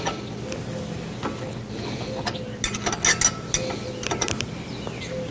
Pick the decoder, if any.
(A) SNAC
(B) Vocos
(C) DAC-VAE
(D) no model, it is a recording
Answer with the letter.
D